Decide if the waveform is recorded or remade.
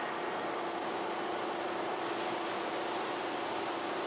recorded